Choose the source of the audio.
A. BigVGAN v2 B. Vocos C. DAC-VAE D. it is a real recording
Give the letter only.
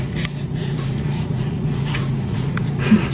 B